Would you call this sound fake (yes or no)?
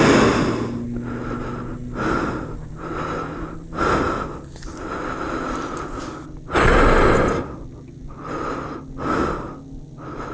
no